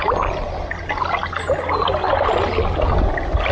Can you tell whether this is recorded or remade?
recorded